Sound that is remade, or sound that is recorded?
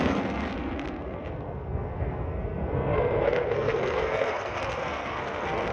remade